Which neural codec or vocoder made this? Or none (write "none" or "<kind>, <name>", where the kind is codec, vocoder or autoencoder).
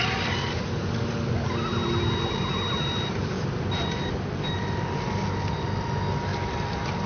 none